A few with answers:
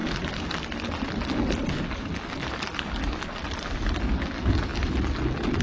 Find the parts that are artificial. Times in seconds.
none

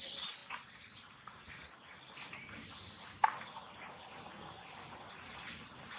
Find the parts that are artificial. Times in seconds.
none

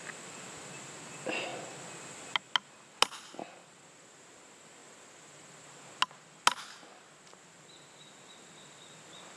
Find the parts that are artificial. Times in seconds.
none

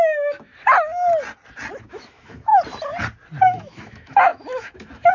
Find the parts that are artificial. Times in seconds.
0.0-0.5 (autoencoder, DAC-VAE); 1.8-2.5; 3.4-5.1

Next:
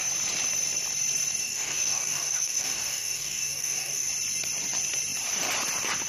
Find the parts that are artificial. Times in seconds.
1.4-4.1 (codec, DAC)

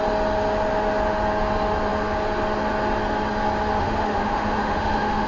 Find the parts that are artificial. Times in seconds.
3.8-5.3 (autoencoder, DAC-VAE)

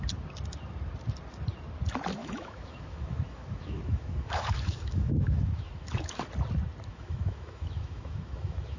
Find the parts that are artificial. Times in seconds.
2.2-6.2 (autoencoder, DAC-VAE); 6.9-8.8